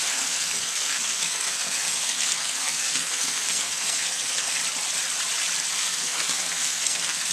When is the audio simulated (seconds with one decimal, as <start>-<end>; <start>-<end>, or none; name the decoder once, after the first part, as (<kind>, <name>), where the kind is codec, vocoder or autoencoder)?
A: 0.0-4.6 (codec, SNAC); 5.7-7.3